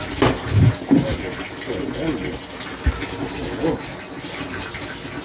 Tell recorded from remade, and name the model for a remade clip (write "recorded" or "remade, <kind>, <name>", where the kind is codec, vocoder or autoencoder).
recorded